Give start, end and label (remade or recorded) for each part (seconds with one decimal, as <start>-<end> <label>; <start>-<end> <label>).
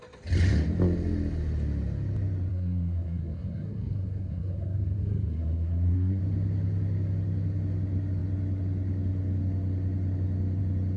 0.0-2.5 recorded; 2.5-6.2 remade; 6.2-11.0 recorded